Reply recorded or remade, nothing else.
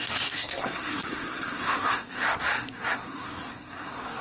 remade